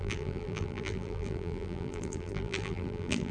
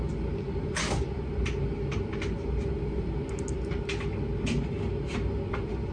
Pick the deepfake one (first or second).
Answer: first